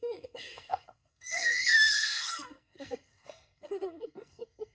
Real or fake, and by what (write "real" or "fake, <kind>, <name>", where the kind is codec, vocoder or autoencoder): fake, codec, SNAC